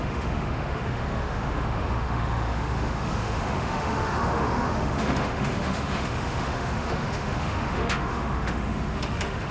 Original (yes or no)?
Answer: no